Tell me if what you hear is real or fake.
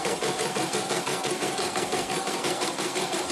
fake